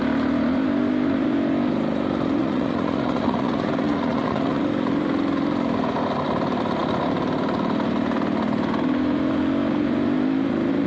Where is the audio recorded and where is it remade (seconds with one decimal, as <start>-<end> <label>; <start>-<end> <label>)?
0.0-2.4 recorded; 2.4-4.6 remade; 4.6-10.9 recorded

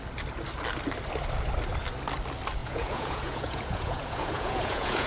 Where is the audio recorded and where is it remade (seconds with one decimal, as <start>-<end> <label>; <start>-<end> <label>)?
0.0-2.6 recorded; 2.6-5.1 remade

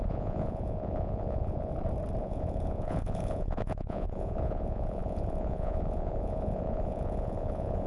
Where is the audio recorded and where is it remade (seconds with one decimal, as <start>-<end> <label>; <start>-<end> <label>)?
0.0-1.7 remade; 1.7-2.2 recorded; 2.2-7.9 remade

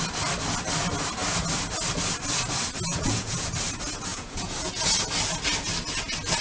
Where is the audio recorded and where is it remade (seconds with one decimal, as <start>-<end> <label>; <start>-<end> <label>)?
0.0-2.9 recorded; 2.9-3.5 remade; 3.5-4.1 recorded; 4.1-4.7 remade; 4.7-6.4 recorded

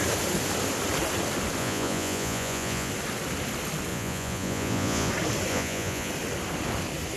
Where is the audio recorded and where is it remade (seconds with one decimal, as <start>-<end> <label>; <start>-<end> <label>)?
0.0-1.6 recorded; 1.6-2.9 remade; 2.9-3.9 recorded; 3.9-5.1 remade; 5.1-5.5 recorded; 5.5-6.1 remade; 6.1-7.2 recorded

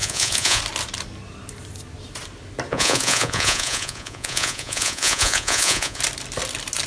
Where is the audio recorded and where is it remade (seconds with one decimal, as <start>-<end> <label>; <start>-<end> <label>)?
0.0-0.6 remade; 0.6-2.7 recorded; 2.7-6.0 remade; 6.0-6.9 recorded

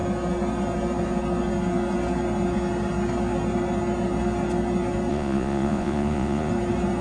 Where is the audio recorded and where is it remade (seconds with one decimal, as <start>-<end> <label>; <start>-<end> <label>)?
0.0-5.1 recorded; 5.1-6.5 remade; 6.5-7.0 recorded

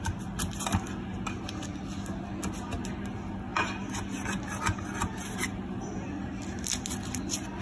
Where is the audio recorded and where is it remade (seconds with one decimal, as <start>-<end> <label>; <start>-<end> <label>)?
0.0-7.6 recorded